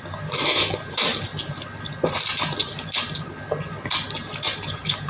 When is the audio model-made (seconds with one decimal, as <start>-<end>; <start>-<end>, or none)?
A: 0.0-0.4; 0.9-1.3; 4.4-5.1